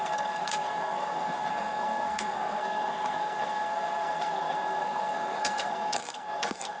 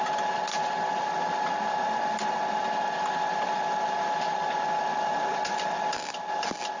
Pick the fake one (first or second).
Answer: first